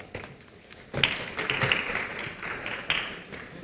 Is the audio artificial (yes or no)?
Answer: no